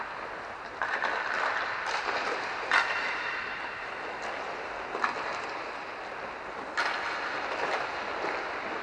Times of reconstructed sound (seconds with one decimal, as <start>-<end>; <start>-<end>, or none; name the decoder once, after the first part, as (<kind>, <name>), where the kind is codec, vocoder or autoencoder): none